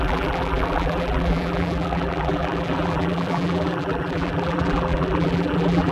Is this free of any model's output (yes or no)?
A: no